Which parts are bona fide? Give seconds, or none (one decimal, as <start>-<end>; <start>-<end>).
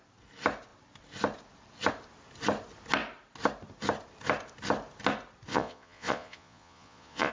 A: 0.0-5.5